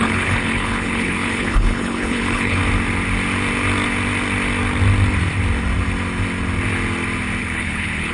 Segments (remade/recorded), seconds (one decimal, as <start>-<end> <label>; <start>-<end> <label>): 0.0-2.6 remade; 2.6-7.4 recorded; 7.4-8.1 remade